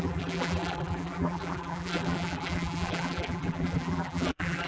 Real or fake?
fake